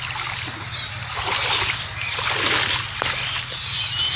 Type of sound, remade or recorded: recorded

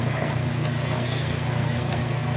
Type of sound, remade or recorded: remade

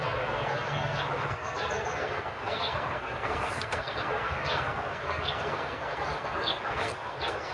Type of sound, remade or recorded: remade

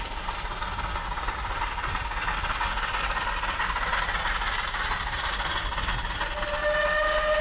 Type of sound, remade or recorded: recorded